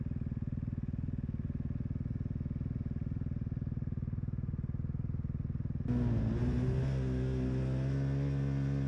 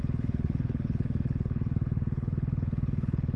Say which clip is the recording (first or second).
first